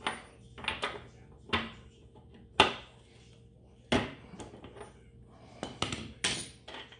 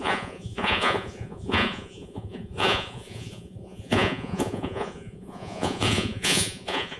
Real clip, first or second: first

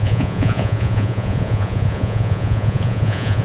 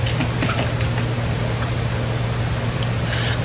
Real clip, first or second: second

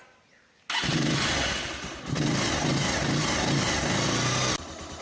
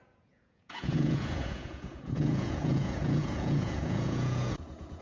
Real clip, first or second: first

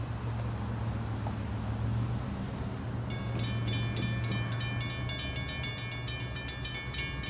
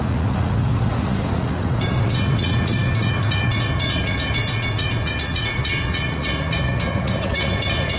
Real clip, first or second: first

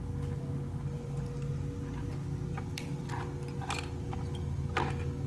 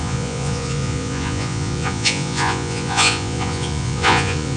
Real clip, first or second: first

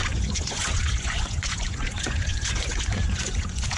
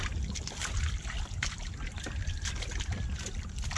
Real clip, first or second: second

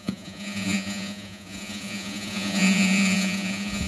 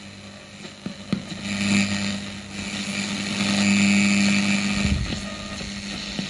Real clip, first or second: second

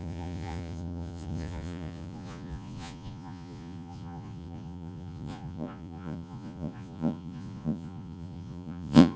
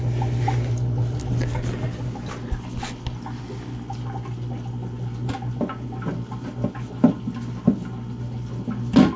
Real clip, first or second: second